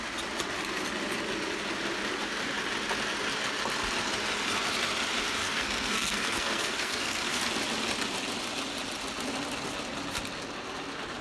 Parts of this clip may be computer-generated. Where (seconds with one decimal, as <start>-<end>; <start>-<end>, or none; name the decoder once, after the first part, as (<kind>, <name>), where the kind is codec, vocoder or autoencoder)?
5.4-7.4 (codec, SNAC)